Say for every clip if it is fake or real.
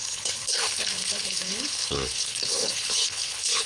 fake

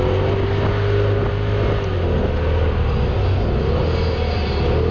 real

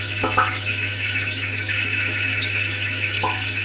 fake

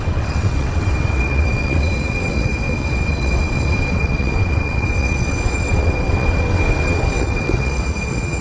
fake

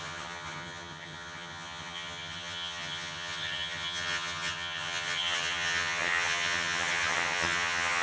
fake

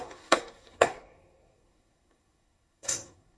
fake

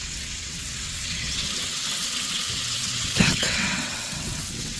fake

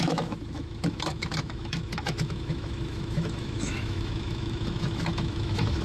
fake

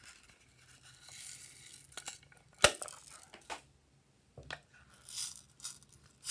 real